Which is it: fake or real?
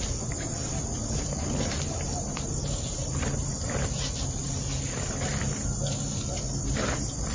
real